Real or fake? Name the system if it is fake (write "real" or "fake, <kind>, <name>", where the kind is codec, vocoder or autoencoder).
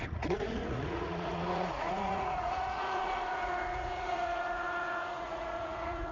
fake, vocoder, Vocos